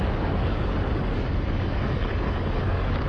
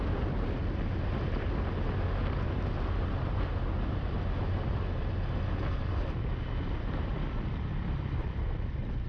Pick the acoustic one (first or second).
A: second